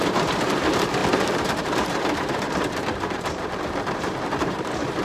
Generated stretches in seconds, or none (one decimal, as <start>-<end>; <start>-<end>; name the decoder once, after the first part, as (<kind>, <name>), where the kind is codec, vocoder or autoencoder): 0.0-5.0 (vocoder, BigVGAN v2)